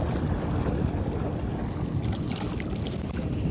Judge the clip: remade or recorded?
recorded